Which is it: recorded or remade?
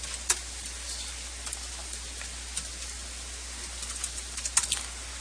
recorded